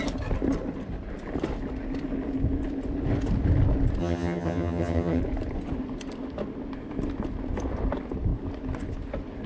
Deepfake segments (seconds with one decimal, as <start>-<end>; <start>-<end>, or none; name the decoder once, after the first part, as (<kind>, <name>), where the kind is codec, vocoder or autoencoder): 4.0-5.2 (vocoder, HiFi-GAN)